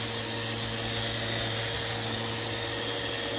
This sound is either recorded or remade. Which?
recorded